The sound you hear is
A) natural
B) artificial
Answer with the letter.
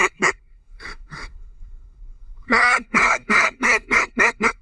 B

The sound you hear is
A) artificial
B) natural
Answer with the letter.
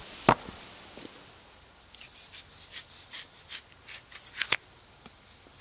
B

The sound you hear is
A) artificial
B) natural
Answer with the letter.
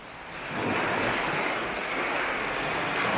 B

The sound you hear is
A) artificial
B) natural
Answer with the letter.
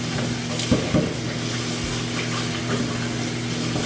B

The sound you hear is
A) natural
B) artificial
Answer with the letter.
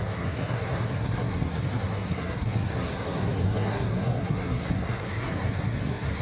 B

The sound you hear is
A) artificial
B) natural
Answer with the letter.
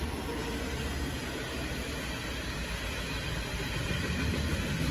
B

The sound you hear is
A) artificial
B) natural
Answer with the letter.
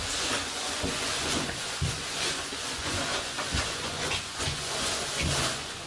A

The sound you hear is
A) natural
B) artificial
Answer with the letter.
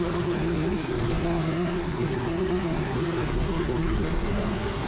B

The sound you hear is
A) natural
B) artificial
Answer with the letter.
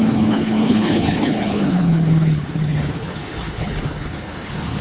B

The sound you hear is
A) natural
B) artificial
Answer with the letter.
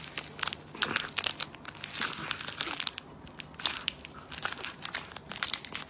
A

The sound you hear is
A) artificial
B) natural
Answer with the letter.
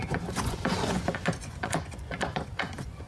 A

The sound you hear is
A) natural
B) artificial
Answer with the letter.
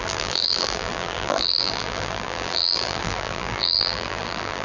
B